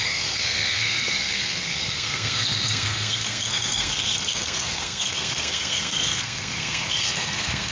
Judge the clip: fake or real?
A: fake